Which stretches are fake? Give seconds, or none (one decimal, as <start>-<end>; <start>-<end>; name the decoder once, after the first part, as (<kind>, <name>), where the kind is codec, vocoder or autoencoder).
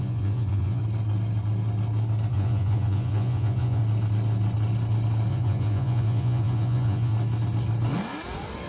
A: 0.0-0.8 (vocoder, Vocos); 2.3-3.8; 5.3-7.1